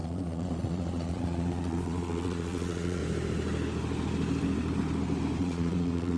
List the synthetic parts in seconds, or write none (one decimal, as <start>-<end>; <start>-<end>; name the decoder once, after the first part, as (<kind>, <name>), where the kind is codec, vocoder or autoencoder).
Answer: 0.0-3.0 (vocoder, Vocos); 5.4-6.2